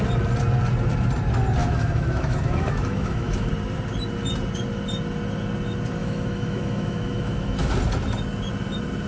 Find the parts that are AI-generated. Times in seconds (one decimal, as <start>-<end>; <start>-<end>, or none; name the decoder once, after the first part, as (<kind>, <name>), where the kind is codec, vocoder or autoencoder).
1.6-3.5 (autoencoder, DAC-VAE); 6.0-7.7